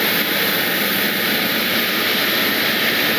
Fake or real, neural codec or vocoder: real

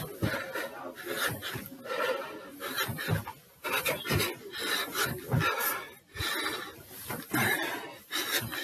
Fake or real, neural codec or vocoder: real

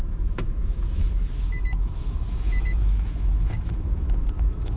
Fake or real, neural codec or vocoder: fake, autoencoder, DAC-VAE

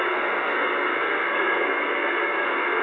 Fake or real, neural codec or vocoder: fake, codec, SNAC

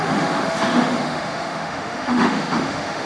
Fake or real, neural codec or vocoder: fake, autoencoder, DAC-VAE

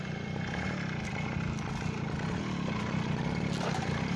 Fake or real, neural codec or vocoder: real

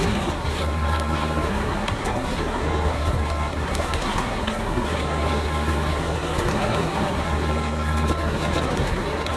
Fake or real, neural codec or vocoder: fake, codec, SNAC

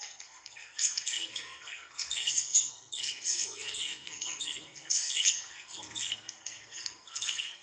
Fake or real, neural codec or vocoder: fake, codec, SNAC